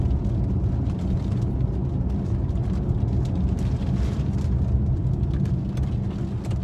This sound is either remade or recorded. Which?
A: recorded